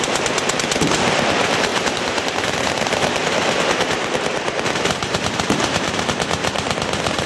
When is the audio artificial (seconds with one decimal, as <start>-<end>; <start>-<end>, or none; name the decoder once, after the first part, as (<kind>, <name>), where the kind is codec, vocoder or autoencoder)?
1.7-6.0 (vocoder, BigVGAN v2); 6.4-7.3